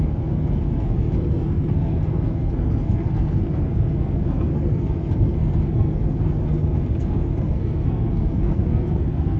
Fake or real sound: fake